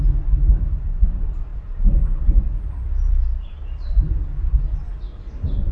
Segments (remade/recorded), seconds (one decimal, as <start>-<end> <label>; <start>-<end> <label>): 0.0-1.5 recorded; 1.5-4.9 remade; 4.9-5.7 recorded